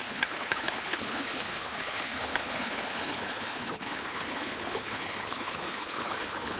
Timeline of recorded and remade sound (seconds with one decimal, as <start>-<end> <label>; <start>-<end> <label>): 0.0-6.6 remade